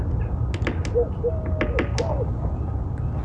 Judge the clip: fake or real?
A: real